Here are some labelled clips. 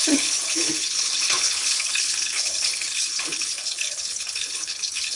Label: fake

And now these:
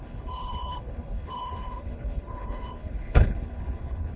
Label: fake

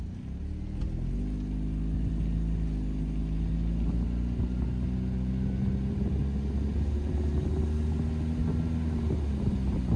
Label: real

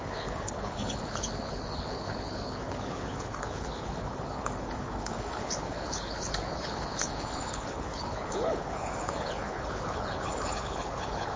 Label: fake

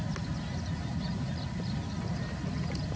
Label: real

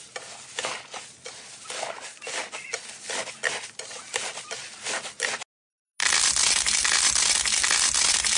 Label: real